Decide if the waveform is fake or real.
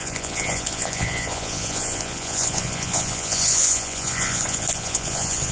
fake